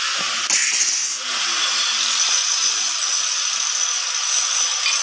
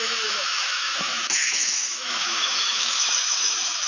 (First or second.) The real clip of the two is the first